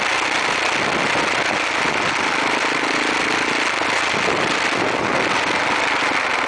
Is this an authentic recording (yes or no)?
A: yes